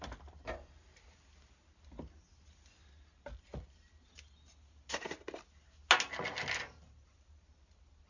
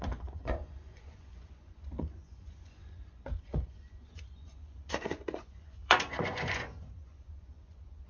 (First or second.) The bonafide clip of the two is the first